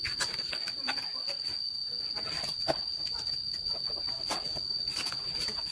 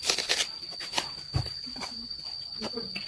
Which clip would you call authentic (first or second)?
first